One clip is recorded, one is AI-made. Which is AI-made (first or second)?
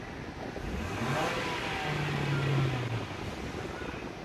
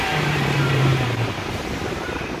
second